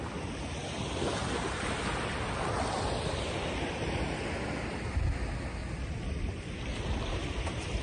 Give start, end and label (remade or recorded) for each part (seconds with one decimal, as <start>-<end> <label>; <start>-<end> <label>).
0.0-5.6 recorded; 5.6-6.4 remade; 6.4-7.8 recorded